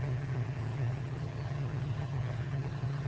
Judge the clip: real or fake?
fake